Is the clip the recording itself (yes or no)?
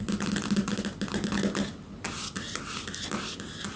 yes